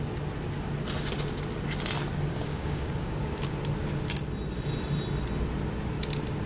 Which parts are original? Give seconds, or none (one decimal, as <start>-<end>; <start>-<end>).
0.0-2.3; 3.5-6.5